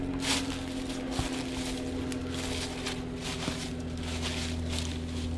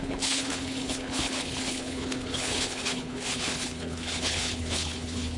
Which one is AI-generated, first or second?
second